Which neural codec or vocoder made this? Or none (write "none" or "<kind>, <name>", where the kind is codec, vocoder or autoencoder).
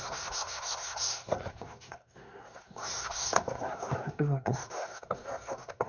codec, SNAC